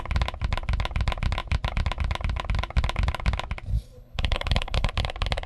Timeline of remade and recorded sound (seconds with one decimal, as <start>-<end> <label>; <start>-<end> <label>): 0.0-3.7 recorded; 3.7-4.9 remade; 4.9-5.5 recorded